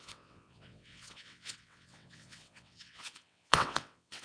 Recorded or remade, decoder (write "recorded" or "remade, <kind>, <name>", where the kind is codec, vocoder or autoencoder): remade, vocoder, WaveNeXt